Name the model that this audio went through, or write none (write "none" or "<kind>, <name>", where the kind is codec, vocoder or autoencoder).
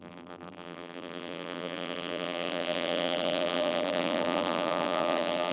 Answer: vocoder, BigVGAN v2